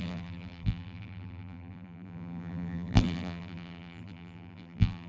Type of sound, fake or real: fake